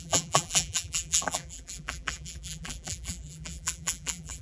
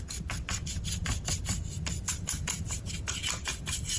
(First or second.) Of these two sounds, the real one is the second